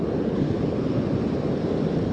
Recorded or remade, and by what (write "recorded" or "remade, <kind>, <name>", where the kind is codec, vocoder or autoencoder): recorded